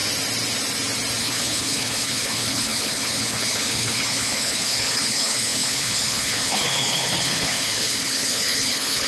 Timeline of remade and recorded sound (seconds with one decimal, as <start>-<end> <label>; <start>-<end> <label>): 0.0-1.2 recorded; 1.2-9.1 remade